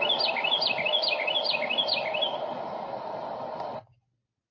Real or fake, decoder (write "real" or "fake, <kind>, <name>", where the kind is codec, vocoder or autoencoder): real